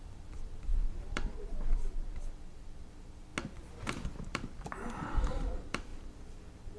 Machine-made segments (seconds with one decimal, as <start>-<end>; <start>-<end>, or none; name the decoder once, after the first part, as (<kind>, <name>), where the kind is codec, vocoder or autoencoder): 0.0-3.3 (vocoder, BigVGAN v2); 4.2-6.8